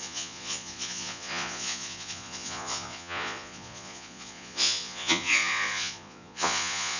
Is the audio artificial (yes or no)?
yes